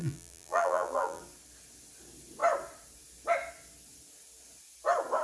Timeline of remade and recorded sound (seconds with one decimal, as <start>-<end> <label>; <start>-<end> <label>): 0.0-1.2 remade; 1.2-5.2 recorded